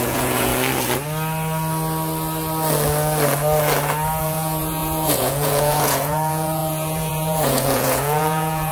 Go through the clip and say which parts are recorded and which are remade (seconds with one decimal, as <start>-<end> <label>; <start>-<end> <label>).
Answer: 0.0-0.5 remade; 0.5-4.2 recorded; 4.2-8.7 remade